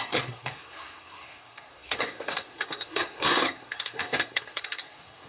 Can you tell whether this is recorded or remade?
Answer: remade